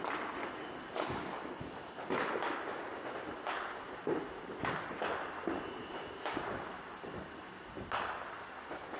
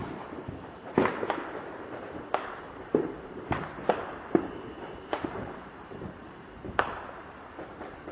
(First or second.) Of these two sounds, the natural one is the first